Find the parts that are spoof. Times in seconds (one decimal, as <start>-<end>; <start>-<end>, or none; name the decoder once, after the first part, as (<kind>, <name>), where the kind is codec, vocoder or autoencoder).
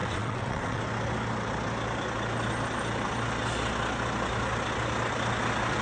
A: 0.0-0.8 (vocoder, WaveNeXt)